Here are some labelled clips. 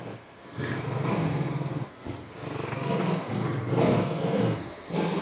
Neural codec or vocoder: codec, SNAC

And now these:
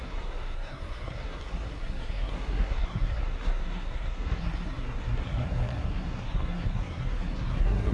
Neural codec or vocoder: codec, SNAC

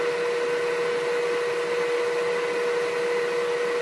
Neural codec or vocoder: none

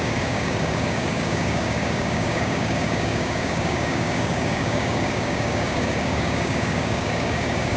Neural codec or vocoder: codec, DAC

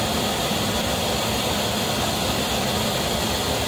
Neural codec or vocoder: none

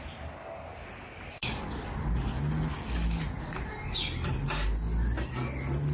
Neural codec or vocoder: none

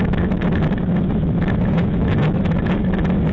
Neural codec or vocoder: autoencoder, DAC-VAE